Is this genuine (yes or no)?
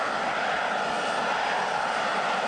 yes